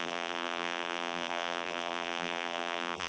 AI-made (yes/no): yes